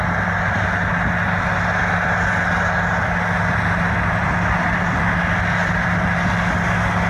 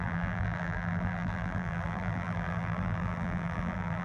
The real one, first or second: first